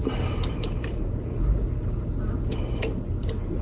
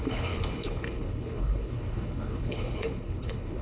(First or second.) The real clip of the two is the first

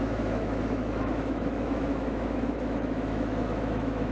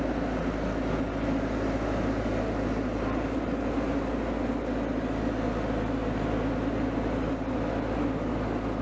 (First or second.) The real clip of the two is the second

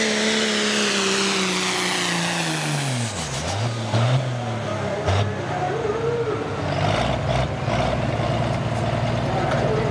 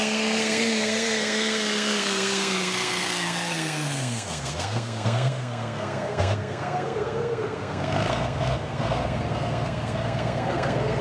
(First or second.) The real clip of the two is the first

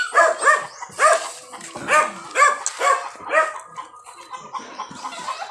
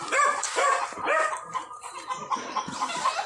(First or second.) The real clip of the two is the first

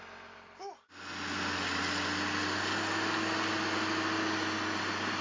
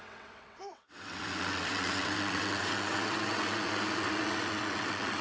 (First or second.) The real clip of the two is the first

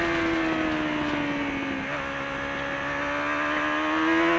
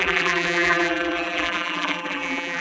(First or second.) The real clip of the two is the first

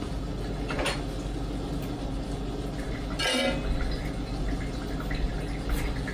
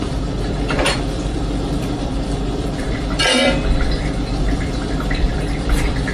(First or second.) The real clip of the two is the first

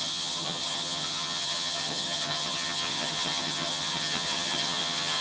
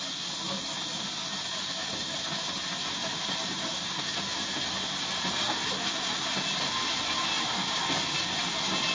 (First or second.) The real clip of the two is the second